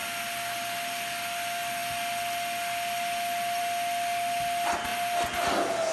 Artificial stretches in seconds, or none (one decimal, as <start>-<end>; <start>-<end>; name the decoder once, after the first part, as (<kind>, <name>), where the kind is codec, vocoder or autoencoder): none